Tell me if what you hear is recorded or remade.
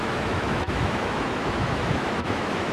remade